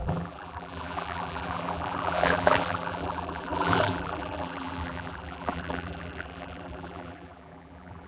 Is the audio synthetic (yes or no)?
yes